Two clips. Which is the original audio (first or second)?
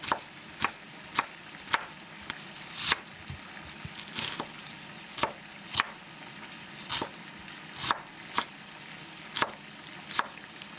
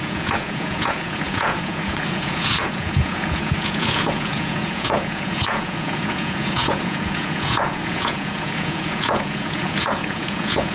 first